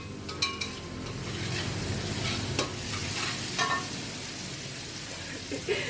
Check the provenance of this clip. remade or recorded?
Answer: recorded